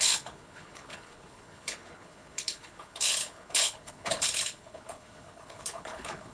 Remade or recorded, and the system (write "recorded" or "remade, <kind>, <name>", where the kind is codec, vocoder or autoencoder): remade, codec, HILCodec